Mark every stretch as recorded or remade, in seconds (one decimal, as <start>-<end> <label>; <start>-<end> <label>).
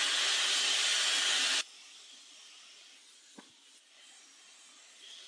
0.0-5.3 recorded